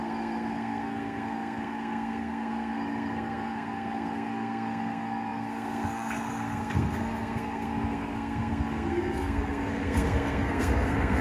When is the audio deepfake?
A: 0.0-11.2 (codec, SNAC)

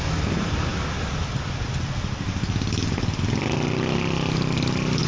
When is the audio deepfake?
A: none